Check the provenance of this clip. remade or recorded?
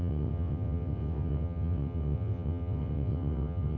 remade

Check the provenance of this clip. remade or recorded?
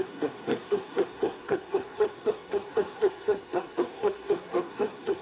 remade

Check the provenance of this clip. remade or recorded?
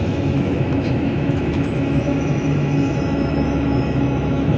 remade